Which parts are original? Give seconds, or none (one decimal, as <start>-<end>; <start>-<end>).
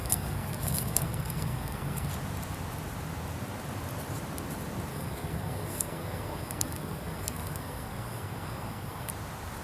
2.1-4.9; 9.1-9.6